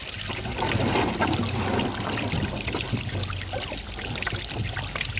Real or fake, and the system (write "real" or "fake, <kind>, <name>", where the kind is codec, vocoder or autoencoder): real